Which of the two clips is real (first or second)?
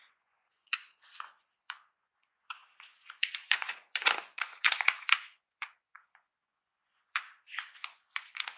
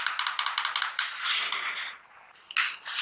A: second